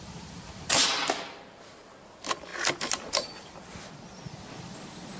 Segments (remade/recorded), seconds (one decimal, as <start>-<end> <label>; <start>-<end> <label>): 0.0-5.2 recorded

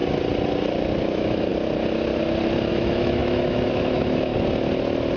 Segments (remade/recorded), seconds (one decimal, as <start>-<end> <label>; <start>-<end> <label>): 0.0-1.1 recorded; 1.1-1.5 remade; 1.5-2.7 recorded; 2.7-4.3 remade; 4.3-5.2 recorded

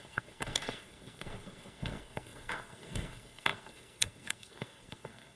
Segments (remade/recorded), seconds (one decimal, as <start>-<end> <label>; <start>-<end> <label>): 0.0-5.4 remade

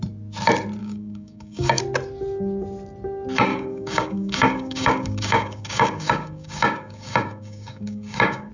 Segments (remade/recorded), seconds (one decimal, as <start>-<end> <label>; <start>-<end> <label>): 0.0-0.8 recorded; 0.8-1.8 remade; 1.8-3.5 recorded; 3.5-8.5 remade

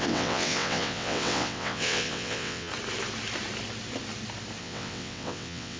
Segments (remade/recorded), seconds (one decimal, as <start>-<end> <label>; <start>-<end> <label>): 0.0-2.7 remade; 2.7-4.6 recorded; 4.6-5.8 remade